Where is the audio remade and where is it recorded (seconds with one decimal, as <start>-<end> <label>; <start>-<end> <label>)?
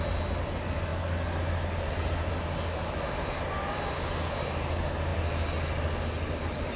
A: 0.0-6.8 recorded